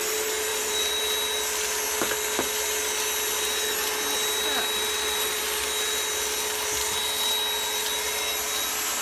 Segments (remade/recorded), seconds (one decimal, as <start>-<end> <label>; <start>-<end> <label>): 0.0-0.5 recorded; 0.5-1.0 remade; 1.0-9.0 recorded

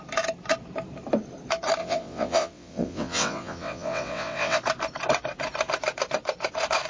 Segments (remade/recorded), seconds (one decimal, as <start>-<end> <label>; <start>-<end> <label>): 0.0-1.8 recorded; 1.8-4.6 remade; 4.6-6.9 recorded

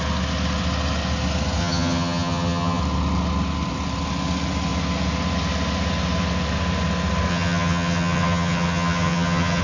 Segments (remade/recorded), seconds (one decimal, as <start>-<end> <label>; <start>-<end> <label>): 0.0-1.6 recorded; 1.6-2.8 remade; 2.8-7.3 recorded; 7.3-9.6 remade

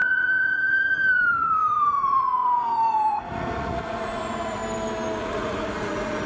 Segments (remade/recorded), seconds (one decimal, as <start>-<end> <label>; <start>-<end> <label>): 0.0-4.6 remade; 4.6-5.2 recorded; 5.2-6.3 remade

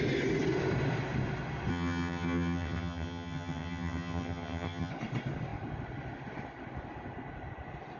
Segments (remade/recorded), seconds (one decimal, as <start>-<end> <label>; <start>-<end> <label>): 0.0-1.7 recorded; 1.7-4.9 remade; 4.9-8.0 recorded

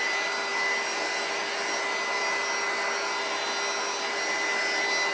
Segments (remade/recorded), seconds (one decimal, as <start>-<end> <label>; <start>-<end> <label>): 0.0-5.1 recorded